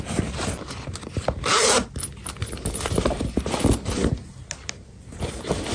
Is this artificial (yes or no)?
no